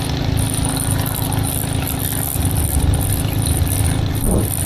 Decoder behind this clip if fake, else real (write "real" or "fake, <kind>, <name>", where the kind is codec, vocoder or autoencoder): real